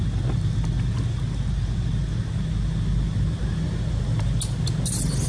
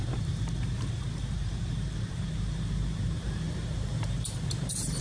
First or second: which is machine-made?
second